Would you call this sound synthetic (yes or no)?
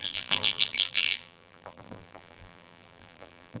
yes